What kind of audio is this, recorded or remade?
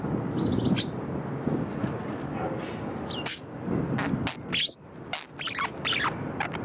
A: recorded